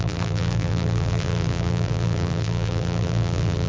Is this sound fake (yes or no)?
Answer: yes